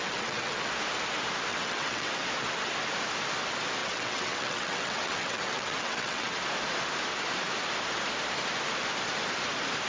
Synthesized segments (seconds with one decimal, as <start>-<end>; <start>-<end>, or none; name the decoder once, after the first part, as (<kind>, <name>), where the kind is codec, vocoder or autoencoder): 0.0-0.7 (vocoder, WaveNeXt); 1.5-2.1; 3.8-6.3